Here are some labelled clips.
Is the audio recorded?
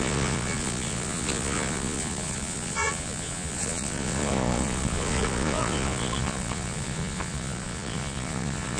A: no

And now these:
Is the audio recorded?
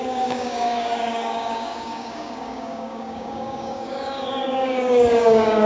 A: no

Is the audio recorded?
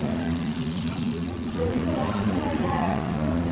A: no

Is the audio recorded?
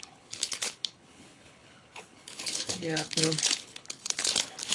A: no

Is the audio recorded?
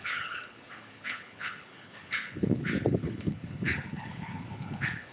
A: no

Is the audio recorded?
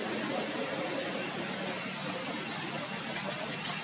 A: yes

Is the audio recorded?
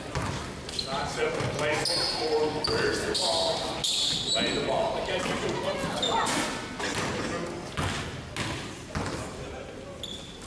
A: yes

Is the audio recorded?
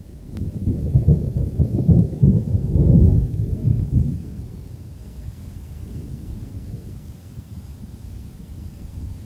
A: no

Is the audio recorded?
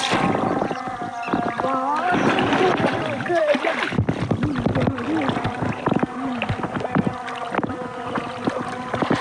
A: yes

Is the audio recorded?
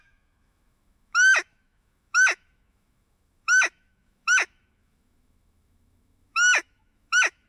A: no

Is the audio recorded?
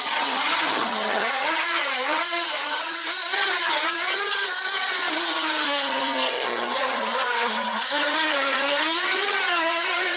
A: no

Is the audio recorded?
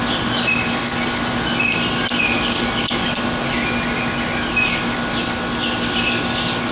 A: yes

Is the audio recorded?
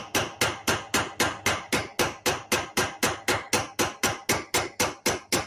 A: yes